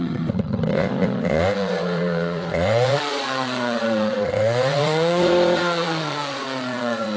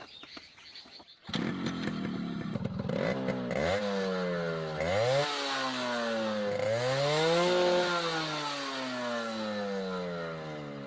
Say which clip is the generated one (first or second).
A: first